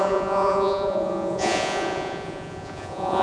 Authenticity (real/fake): fake